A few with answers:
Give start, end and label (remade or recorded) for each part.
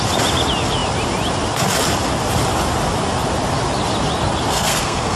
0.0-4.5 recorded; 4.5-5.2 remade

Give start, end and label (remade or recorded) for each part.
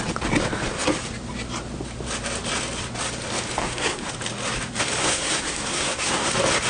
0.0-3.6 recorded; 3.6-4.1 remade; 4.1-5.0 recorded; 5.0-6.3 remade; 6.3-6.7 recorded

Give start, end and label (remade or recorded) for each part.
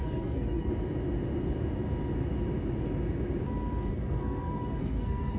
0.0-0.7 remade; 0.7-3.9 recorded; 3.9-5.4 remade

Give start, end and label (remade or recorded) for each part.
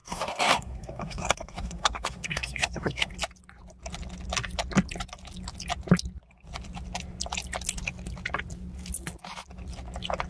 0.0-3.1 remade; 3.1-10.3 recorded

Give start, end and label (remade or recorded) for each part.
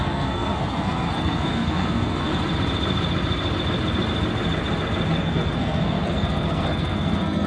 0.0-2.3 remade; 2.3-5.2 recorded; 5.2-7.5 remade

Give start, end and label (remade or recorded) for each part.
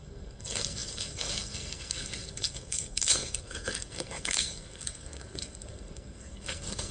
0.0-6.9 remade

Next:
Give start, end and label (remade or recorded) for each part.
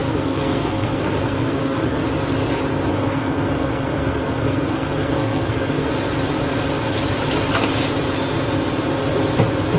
0.0-2.0 remade; 2.0-2.9 recorded; 2.9-5.9 remade; 5.9-9.8 recorded